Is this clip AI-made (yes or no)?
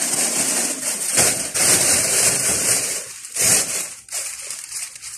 yes